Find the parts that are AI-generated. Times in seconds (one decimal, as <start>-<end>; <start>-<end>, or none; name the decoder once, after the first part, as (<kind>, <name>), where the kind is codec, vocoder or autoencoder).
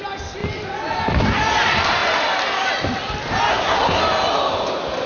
3.5-4.0 (codec, SNAC)